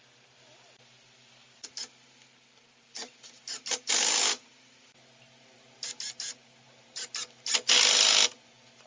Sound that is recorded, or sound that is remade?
recorded